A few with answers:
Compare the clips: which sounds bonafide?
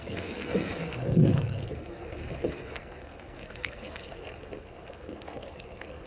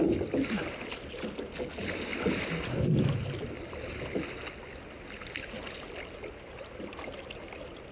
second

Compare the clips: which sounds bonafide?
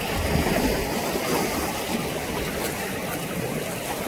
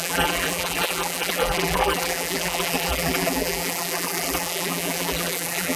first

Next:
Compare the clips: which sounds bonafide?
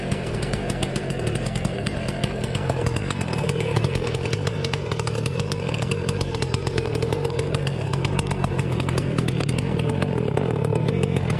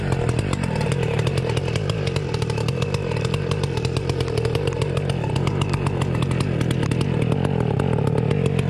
second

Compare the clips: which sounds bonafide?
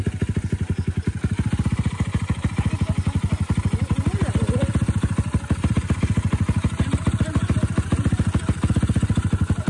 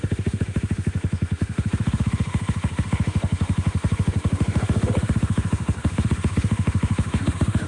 first